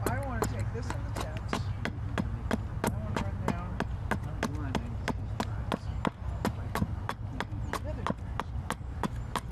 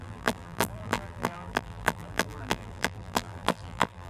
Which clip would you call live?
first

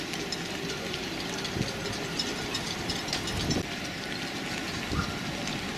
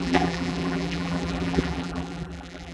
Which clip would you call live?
first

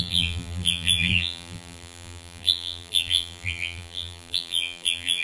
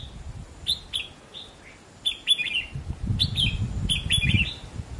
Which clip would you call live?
second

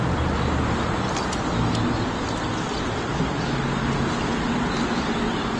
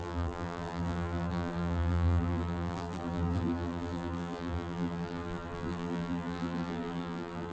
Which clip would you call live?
first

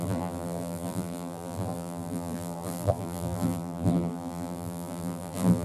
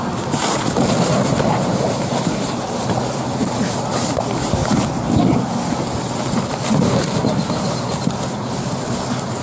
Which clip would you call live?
second